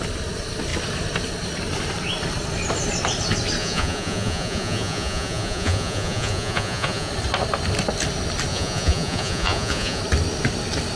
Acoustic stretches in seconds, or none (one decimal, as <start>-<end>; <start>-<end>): 0.0-3.6; 7.1-8.5; 10.0-11.0